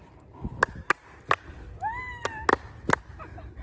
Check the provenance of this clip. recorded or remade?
recorded